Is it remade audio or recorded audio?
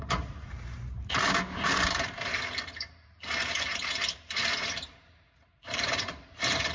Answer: remade